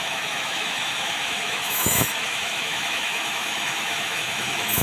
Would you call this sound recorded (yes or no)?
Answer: no